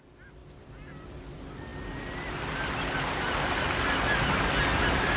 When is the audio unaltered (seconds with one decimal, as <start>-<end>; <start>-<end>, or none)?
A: 0.0-5.2